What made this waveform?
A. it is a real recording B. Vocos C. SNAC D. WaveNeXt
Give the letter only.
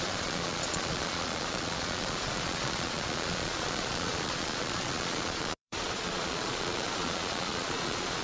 B